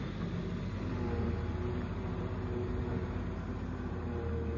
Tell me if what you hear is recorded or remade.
recorded